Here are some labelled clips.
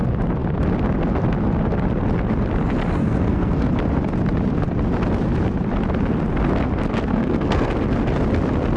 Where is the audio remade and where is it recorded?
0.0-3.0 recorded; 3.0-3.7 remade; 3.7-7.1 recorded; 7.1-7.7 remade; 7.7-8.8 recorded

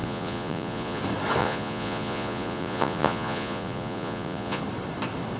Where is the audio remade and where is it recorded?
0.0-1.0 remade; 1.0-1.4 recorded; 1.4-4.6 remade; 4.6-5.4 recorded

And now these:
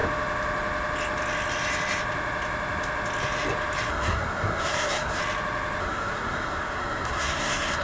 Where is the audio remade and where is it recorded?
0.0-3.9 recorded; 3.9-5.2 remade; 5.2-5.8 recorded; 5.8-7.8 remade